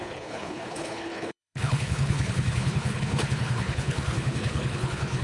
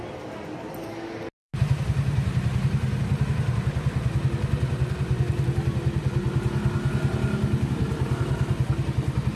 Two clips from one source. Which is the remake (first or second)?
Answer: first